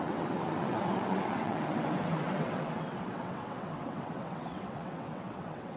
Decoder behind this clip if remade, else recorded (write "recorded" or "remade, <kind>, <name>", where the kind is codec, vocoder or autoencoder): remade, vocoder, WaveNeXt